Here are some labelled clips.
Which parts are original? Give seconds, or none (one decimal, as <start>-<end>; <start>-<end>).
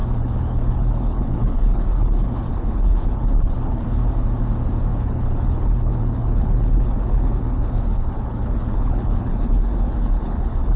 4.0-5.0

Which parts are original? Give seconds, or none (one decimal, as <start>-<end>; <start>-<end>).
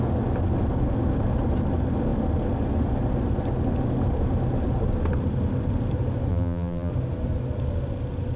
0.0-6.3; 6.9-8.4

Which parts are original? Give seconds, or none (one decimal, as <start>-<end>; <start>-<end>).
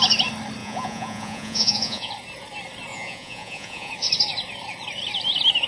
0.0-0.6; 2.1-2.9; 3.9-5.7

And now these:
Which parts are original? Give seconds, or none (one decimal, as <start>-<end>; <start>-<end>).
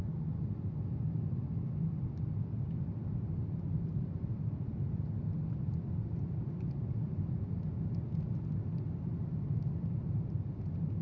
0.0-11.0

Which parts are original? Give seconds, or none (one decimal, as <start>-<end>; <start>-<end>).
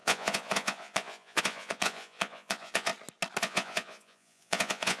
2.9-3.4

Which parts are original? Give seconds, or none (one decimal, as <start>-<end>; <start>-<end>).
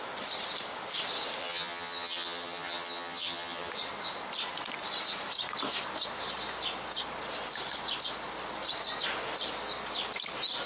0.0-1.4; 3.7-10.7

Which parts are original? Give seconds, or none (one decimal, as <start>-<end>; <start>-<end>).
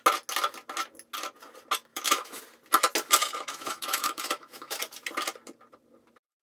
0.0-1.9; 2.4-3.2; 4.8-6.4